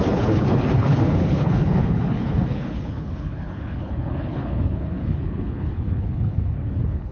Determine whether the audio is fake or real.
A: fake